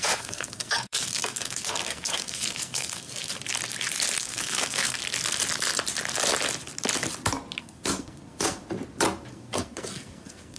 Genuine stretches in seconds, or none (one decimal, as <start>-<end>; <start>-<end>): 3.3-4.2; 5.0-7.6; 8.6-9.3